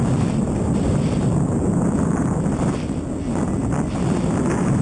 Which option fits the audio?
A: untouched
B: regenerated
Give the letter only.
A